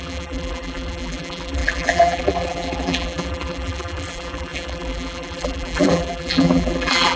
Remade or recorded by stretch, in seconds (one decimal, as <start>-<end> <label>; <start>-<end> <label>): 0.0-7.2 remade

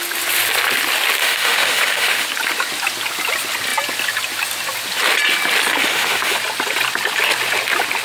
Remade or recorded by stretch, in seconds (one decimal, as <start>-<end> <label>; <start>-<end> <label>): 0.0-1.2 recorded; 1.2-2.3 remade; 2.3-5.8 recorded; 5.8-6.4 remade; 6.4-8.0 recorded

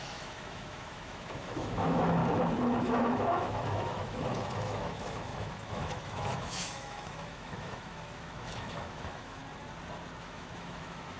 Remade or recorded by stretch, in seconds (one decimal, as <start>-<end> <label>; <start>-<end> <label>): 0.0-2.2 remade; 2.2-2.8 recorded; 2.8-9.4 remade; 9.4-10.2 recorded; 10.2-11.2 remade

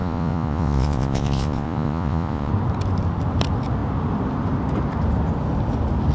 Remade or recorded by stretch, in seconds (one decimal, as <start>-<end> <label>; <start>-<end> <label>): 0.0-2.5 remade; 2.5-6.1 recorded

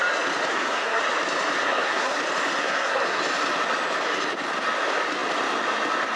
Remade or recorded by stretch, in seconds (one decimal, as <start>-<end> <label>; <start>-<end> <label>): 0.0-0.5 recorded; 0.5-1.0 remade; 1.0-1.6 recorded; 1.6-2.2 remade; 2.2-2.6 recorded; 2.6-3.2 remade; 3.2-6.2 recorded

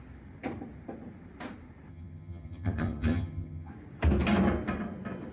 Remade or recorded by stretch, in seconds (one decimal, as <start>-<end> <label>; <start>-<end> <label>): 0.0-1.9 recorded; 1.9-3.7 remade; 3.7-5.3 recorded

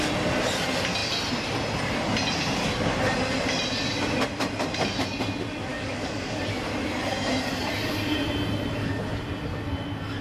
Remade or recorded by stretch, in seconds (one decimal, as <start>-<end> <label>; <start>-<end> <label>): 0.0-5.7 recorded; 5.7-6.4 remade; 6.4-10.2 recorded

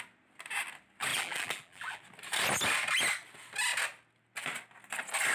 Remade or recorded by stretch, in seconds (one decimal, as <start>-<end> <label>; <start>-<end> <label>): 0.0-1.1 recorded; 1.1-2.0 remade; 2.0-5.3 recorded